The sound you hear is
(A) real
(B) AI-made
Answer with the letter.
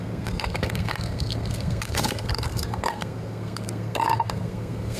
B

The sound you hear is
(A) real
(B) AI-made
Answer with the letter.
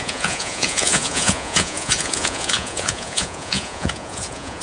B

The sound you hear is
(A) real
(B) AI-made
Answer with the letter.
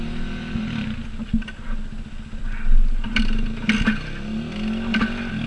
A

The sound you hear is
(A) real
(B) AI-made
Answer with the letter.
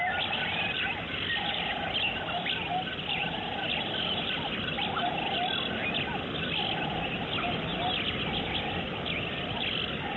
A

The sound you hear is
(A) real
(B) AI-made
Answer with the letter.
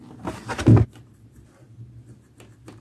A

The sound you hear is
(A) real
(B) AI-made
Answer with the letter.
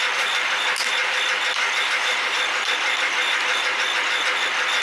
A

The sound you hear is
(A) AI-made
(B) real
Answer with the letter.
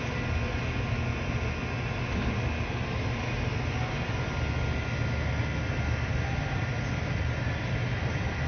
B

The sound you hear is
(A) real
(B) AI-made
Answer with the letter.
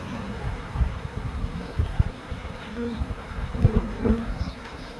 B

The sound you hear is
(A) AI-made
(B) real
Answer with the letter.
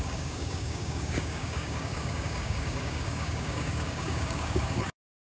A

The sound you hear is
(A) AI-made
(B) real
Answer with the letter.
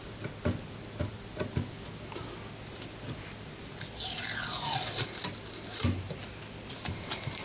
B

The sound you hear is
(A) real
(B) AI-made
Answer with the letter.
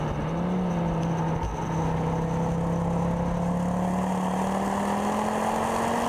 A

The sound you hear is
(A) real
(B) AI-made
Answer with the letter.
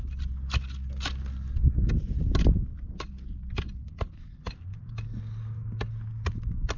A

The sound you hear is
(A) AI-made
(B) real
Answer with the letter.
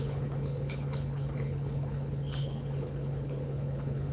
A